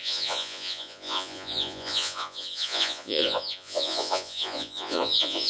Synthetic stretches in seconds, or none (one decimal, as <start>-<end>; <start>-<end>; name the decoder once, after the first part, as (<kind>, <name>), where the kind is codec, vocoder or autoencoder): 0.0-5.5 (vocoder, Vocos)